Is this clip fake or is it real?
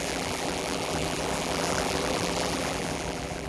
fake